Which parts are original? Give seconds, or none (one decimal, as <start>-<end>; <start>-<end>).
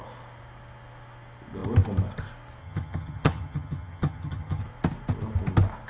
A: 0.0-2.6; 4.6-5.9